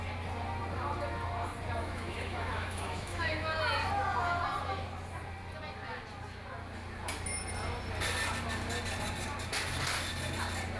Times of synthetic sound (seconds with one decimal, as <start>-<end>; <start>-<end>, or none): 1.8-3.6